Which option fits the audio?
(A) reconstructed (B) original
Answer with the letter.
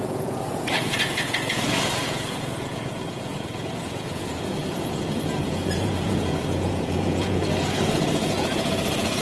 A